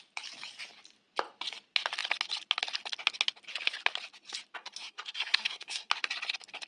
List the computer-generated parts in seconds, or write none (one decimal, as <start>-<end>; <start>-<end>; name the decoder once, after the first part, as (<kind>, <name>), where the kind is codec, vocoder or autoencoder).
4.6-5.9 (codec, SNAC)